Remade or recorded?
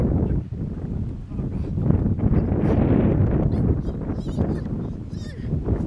recorded